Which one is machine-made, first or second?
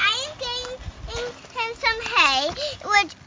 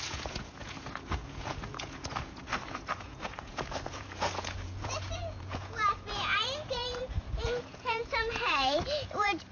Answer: second